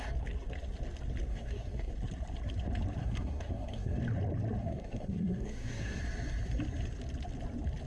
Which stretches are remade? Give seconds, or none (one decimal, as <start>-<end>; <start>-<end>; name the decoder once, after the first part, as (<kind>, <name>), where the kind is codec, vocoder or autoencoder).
1.3-1.9 (codec, SNAC); 3.0-4.0; 4.6-6.0